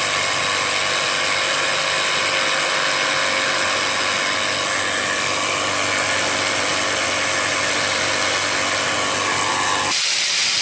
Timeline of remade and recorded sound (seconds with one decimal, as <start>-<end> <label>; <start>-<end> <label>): 0.0-10.6 recorded